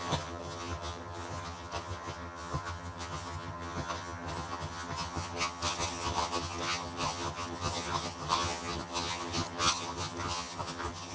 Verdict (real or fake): fake